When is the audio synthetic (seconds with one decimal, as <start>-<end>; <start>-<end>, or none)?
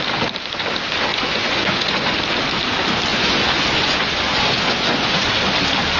1.1-2.1; 3.1-5.3